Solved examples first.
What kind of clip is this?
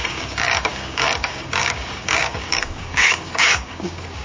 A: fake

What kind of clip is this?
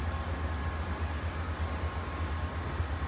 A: real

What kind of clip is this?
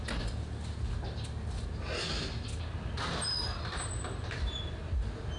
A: real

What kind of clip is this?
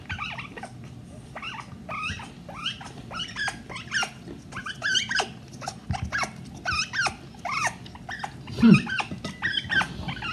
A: real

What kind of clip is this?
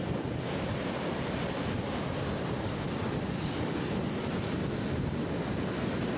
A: real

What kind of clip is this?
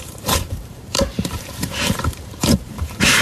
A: fake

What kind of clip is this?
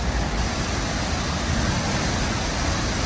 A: real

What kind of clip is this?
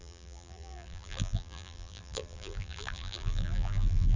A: fake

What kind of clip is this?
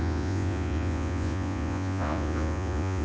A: fake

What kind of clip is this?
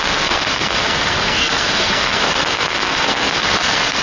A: fake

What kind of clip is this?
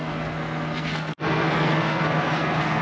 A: fake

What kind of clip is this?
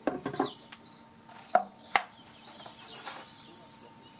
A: real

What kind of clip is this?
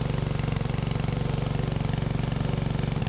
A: real